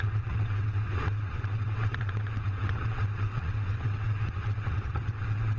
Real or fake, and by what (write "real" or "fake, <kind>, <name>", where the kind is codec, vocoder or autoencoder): fake, vocoder, WaveNeXt